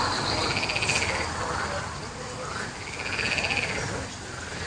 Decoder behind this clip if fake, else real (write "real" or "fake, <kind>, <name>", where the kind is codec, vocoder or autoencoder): real